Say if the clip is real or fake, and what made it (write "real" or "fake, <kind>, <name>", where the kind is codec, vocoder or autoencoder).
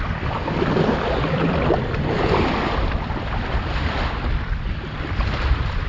fake, vocoder, BigVGAN v2